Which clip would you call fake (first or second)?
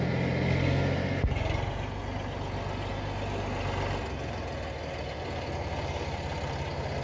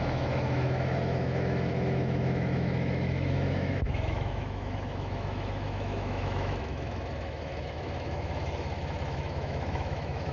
second